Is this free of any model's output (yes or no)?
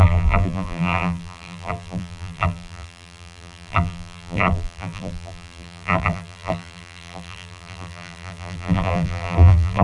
no